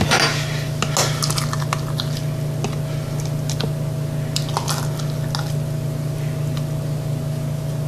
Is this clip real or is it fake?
real